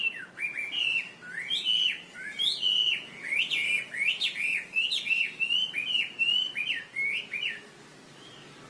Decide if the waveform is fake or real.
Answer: real